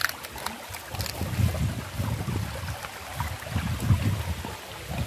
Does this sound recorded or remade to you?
recorded